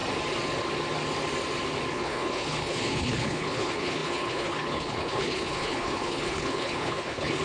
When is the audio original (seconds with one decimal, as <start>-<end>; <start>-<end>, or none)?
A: 0.0-1.9